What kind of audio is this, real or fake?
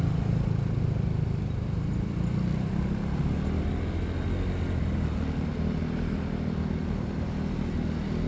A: real